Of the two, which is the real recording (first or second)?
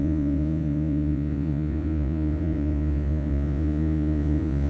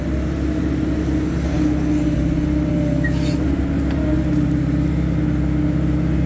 second